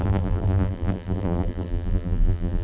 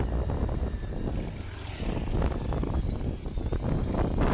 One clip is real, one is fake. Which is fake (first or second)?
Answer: first